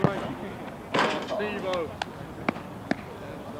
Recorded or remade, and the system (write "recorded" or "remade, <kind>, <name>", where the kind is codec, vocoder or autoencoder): recorded